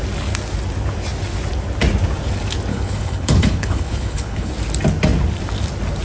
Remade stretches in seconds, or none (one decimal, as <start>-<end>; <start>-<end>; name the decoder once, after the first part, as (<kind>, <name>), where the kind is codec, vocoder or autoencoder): 2.7-4.5 (codec, HILCodec)